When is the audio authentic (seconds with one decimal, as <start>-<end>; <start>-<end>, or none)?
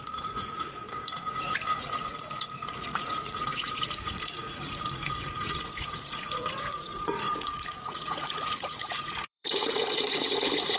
none